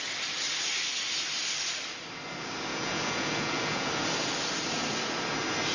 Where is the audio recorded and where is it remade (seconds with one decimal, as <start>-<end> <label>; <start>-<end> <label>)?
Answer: 0.0-2.7 recorded; 2.7-3.9 remade; 3.9-5.7 recorded